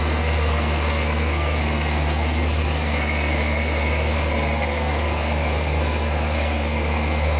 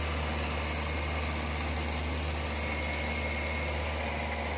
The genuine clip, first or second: second